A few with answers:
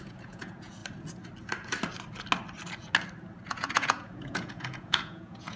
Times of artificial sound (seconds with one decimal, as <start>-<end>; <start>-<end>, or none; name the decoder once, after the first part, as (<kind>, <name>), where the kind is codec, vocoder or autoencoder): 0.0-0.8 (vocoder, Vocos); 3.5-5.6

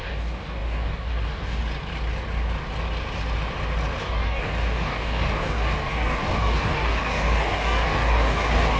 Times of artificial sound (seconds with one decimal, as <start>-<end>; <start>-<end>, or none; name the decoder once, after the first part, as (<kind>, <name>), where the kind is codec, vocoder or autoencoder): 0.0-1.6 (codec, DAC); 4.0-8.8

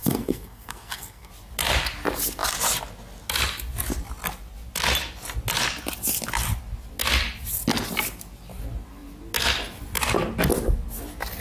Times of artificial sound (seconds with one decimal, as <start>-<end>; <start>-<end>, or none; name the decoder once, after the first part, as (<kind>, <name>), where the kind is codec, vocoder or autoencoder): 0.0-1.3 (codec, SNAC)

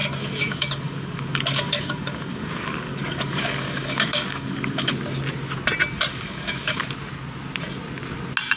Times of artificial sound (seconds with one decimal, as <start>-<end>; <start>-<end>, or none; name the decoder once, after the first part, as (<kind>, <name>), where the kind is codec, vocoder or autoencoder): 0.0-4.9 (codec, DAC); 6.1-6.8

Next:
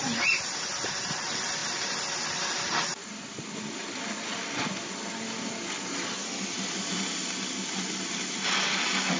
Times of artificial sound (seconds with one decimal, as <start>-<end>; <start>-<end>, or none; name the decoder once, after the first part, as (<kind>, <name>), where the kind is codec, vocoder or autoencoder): none

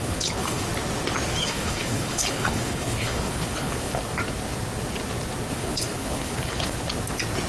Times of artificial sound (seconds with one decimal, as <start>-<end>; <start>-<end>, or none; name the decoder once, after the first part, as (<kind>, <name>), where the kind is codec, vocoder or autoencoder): 0.0-0.7 (codec, HILCodec); 1.4-4.0; 5.5-6.8

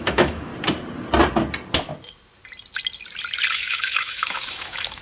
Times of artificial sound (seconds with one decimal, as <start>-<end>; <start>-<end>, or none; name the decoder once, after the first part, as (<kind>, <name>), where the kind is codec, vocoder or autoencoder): 0.0-0.5 (autoencoder, DAC-VAE); 3.5-5.0

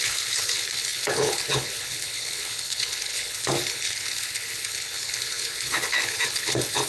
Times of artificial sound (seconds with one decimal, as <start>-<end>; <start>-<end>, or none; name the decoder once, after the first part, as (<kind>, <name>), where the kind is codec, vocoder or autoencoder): 0.0-6.9 (codec, HILCodec)